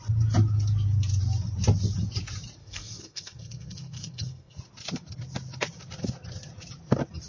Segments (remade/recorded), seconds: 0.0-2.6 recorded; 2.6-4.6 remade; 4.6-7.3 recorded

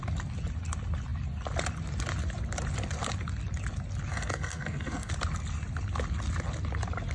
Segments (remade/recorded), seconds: 0.0-4.1 recorded; 4.1-5.1 remade; 5.1-7.1 recorded

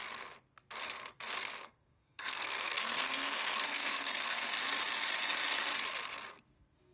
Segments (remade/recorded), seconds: 0.0-1.6 recorded; 1.6-4.5 remade; 4.5-6.3 recorded; 6.3-6.9 remade

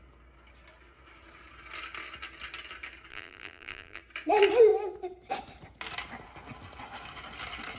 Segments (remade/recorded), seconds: 0.0-3.1 recorded; 3.1-4.0 remade; 4.0-7.8 recorded

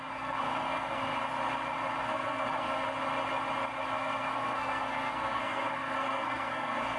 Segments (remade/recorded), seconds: 0.0-1.1 remade; 1.1-2.0 recorded; 2.0-2.8 remade; 2.8-4.0 recorded; 4.0-7.0 remade